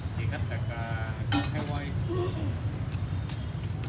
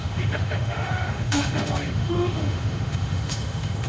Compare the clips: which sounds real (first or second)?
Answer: first